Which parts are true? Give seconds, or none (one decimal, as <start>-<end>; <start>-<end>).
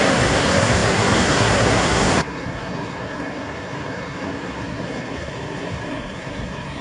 none